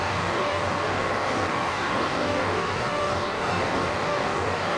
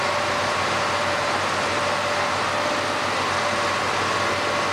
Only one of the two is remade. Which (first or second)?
first